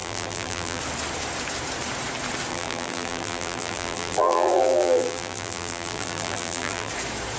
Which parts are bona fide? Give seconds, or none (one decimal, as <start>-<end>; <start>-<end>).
0.8-2.5; 6.9-7.4